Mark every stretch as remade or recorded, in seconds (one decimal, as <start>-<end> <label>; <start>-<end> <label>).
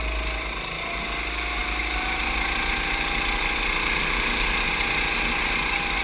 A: 0.0-6.0 recorded